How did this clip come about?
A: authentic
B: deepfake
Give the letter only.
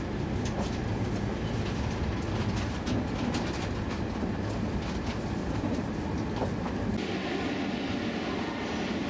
A